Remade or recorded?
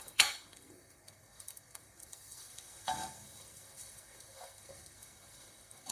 remade